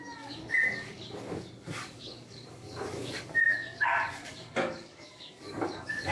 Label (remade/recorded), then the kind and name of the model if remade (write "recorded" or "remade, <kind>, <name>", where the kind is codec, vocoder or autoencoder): remade, codec, DAC